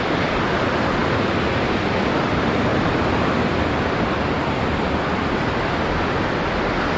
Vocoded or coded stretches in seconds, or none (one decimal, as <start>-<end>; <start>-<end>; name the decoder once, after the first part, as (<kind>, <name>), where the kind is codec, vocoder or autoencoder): 2.7-5.3 (vocoder, BigVGAN v2)